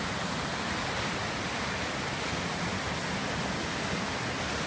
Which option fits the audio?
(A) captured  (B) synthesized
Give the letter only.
A